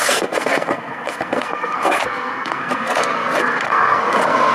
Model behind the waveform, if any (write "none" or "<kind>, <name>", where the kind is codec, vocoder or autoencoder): codec, SNAC